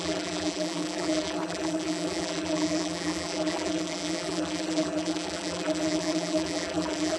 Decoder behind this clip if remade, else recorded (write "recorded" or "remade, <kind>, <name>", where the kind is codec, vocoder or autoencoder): remade, vocoder, BigVGAN v2